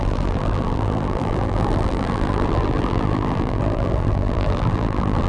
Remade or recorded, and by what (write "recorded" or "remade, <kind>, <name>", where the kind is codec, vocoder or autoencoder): remade, vocoder, BigVGAN v2